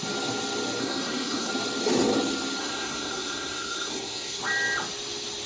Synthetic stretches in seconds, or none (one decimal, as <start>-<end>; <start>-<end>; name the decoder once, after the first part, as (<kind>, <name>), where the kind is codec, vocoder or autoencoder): 0.8-1.5 (codec, SNAC); 2.6-4.4